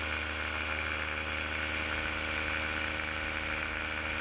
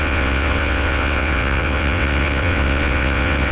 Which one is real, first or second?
first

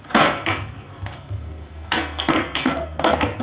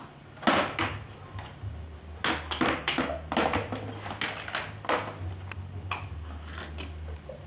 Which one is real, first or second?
second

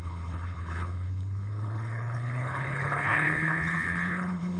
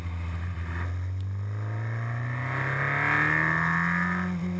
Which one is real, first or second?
second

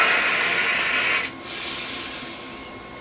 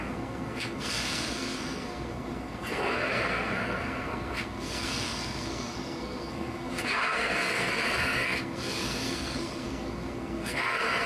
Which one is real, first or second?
first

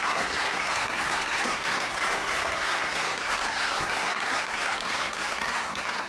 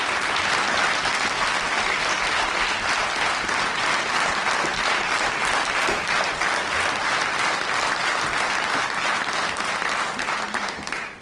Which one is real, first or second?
second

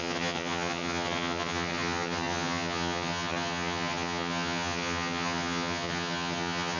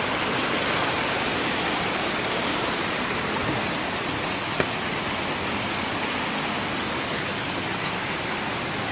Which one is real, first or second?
second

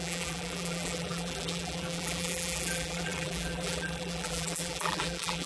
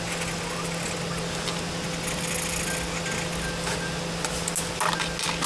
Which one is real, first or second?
second